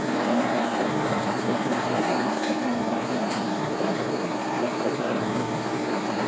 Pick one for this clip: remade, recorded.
remade